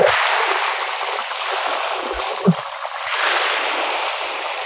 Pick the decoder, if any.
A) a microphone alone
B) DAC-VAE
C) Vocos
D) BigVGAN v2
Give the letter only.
A